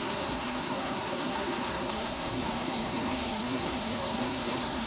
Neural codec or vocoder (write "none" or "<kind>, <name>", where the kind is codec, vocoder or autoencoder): codec, SNAC